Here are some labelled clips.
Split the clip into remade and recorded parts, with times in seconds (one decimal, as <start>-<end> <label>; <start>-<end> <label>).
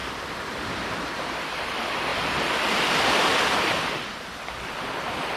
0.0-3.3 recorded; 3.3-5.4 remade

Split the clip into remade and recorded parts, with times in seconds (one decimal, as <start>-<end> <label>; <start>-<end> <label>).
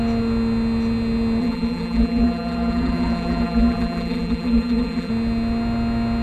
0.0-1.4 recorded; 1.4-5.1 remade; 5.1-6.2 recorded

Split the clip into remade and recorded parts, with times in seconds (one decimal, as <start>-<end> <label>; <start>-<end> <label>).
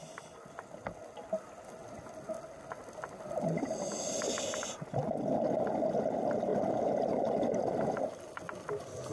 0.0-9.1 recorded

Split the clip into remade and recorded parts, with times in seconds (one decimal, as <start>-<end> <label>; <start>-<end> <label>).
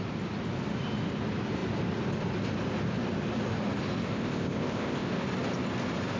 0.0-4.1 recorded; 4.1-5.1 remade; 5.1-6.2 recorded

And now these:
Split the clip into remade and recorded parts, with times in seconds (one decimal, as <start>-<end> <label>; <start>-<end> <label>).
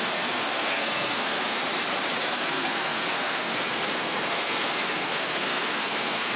0.0-1.6 remade; 1.6-2.2 recorded; 2.2-6.4 remade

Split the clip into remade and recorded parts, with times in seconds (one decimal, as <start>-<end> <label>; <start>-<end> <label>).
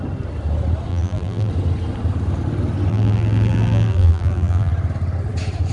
0.0-0.9 recorded; 0.9-1.5 remade; 1.5-2.9 recorded; 2.9-4.7 remade; 4.7-5.7 recorded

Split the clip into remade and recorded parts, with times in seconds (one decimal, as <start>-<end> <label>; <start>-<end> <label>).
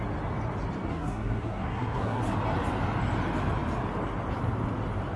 0.0-0.9 recorded; 0.9-2.2 remade; 2.2-5.2 recorded